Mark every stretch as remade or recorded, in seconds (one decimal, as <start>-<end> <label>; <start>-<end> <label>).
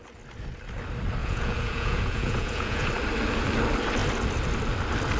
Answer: 0.0-1.2 recorded; 1.2-2.9 remade; 2.9-5.2 recorded